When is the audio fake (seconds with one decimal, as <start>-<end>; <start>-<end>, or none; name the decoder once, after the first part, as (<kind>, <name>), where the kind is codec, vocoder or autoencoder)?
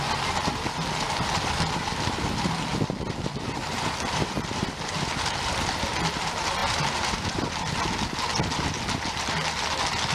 none